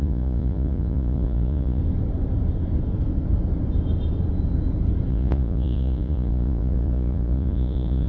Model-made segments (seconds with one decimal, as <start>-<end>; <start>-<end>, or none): 0.0-1.8; 5.1-8.1